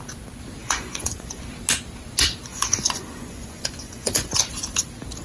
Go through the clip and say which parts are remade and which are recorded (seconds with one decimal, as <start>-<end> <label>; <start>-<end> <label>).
0.0-0.6 recorded; 0.6-1.4 remade; 1.4-2.5 recorded; 2.5-4.4 remade; 4.4-5.2 recorded